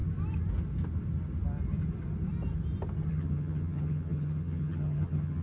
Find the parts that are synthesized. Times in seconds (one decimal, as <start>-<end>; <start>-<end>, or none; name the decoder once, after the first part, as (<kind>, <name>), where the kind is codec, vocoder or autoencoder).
3.1-5.4 (vocoder, HiFi-GAN)